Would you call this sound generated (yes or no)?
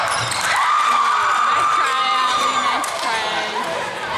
no